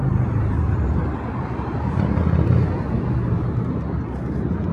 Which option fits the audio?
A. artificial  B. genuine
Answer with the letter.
B